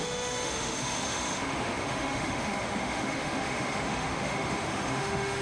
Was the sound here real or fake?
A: fake